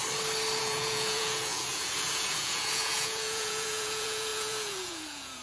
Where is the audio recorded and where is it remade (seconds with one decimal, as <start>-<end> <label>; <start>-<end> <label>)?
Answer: 0.0-0.6 recorded; 0.6-5.4 remade